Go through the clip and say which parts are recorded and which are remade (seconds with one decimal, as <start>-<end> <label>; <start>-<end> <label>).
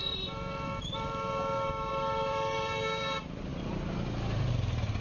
0.0-5.0 recorded